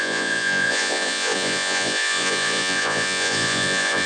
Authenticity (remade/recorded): remade